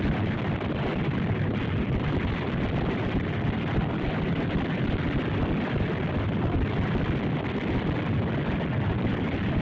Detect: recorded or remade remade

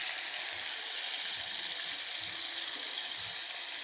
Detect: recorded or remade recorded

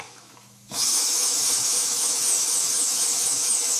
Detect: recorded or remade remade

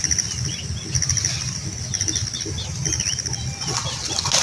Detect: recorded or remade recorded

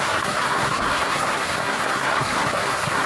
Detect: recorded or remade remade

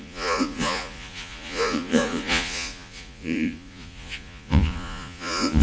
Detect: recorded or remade remade